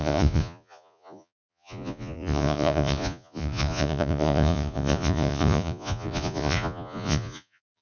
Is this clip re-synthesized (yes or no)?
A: yes